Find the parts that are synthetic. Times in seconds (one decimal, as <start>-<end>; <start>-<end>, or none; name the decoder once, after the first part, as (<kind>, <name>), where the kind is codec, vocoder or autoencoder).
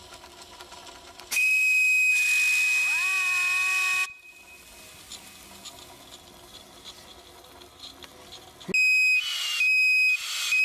none